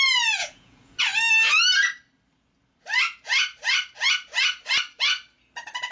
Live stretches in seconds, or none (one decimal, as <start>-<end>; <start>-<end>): 0.0-0.4; 1.0-5.9